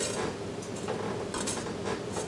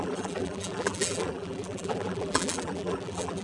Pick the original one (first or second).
first